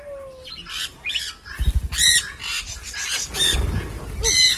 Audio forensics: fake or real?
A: real